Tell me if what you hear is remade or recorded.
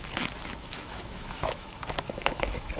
remade